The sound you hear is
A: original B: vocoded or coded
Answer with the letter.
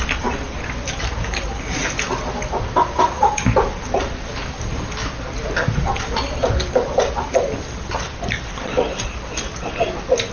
A